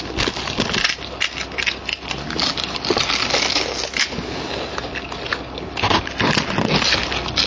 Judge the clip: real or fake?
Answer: real